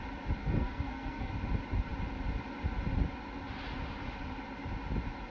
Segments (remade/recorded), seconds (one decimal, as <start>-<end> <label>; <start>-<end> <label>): 0.0-0.4 recorded; 0.4-1.3 remade; 1.3-5.3 recorded